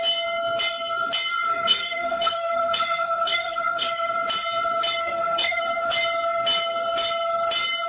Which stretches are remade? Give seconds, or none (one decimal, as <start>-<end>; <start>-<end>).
1.5-4.1; 5.0-5.6